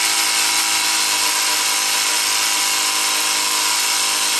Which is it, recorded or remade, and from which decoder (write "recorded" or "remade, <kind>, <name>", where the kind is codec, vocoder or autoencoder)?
recorded